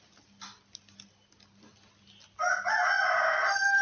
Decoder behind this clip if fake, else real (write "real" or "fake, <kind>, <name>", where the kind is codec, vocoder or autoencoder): real